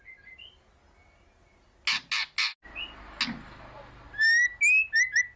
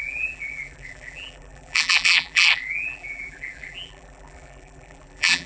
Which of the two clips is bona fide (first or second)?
first